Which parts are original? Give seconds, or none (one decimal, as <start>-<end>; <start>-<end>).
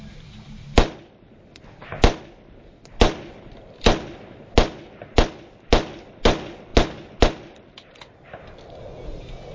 0.0-9.5